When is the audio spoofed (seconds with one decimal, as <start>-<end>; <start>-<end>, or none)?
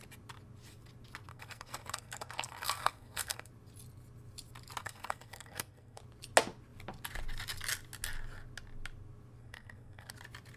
1.3-3.5; 4.8-6.0; 9.4-10.1